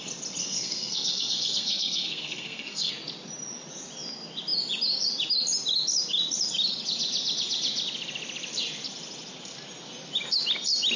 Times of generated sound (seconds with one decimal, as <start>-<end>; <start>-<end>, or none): 0.4-2.9